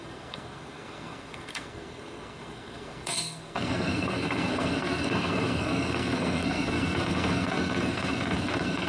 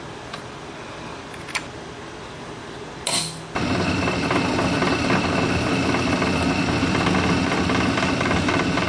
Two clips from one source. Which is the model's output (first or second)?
first